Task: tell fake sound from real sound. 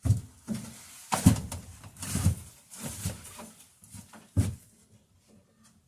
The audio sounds real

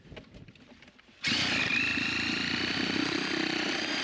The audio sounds real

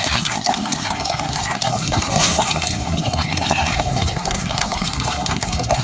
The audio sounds fake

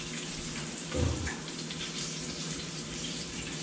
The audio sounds fake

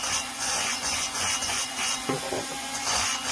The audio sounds fake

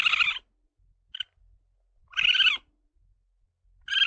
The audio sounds real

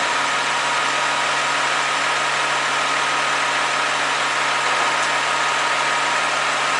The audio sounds real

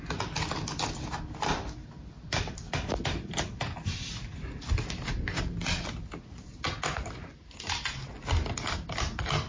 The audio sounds real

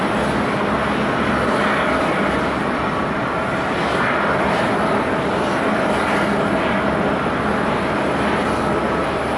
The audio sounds real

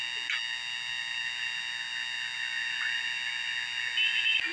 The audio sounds real